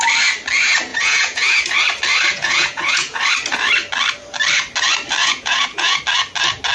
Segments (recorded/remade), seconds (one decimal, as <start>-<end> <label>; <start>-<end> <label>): 0.0-0.9 recorded; 0.9-1.6 remade; 1.6-2.3 recorded; 2.3-3.2 remade; 3.2-5.2 recorded; 5.2-6.0 remade; 6.0-6.7 recorded